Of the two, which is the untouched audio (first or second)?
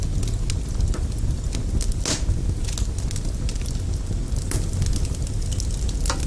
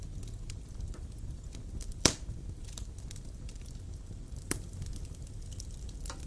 first